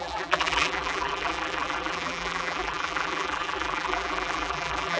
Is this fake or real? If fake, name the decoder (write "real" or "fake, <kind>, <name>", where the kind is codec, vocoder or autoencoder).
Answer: fake, vocoder, BigVGAN v2